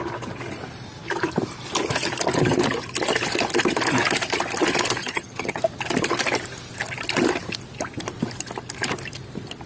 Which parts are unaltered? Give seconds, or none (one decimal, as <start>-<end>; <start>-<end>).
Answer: 0.0-5.0; 5.6-9.7